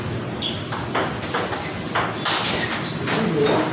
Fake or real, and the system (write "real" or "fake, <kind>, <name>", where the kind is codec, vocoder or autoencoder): real